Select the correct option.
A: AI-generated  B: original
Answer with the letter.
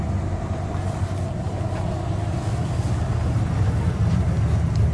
B